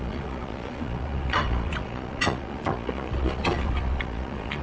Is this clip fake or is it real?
fake